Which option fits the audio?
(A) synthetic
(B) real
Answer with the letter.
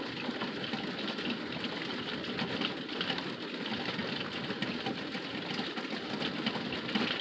B